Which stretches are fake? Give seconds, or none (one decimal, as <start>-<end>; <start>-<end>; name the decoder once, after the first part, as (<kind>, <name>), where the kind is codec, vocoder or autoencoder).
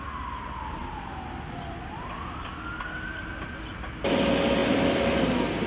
none